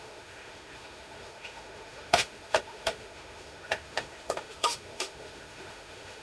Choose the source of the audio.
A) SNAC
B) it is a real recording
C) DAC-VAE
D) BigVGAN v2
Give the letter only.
C